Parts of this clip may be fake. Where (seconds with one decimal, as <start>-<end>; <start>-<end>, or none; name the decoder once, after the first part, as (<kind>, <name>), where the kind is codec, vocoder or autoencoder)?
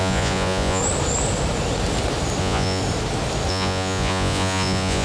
0.0-0.8 (vocoder, Vocos); 2.4-2.8; 3.5-5.0